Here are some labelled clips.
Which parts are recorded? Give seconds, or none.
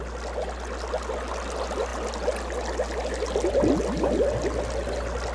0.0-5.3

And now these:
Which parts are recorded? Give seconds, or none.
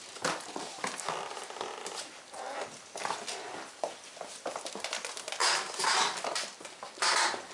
0.0-7.5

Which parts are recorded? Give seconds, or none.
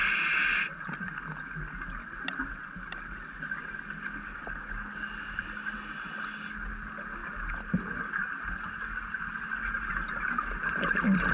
0.0-11.3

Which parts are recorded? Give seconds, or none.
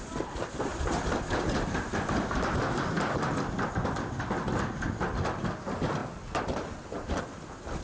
0.0-7.8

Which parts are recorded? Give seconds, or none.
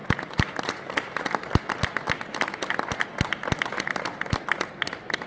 0.0-3.1; 3.6-5.3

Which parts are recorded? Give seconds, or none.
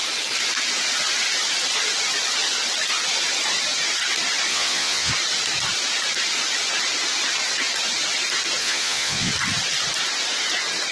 0.0-4.5; 5.1-8.6; 9.3-10.9